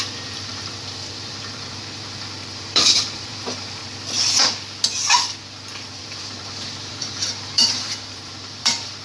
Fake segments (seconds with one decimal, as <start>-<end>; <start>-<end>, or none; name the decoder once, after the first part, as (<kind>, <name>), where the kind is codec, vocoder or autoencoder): 0.0-3.8 (vocoder, BigVGAN v2); 6.0-9.0